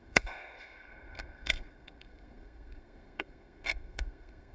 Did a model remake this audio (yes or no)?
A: yes